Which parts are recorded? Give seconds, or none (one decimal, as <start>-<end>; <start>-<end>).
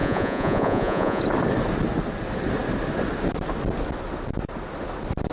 1.2-5.3